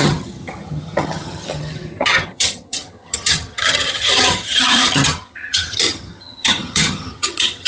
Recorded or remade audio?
remade